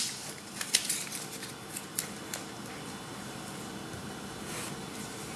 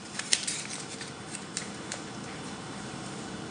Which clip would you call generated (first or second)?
second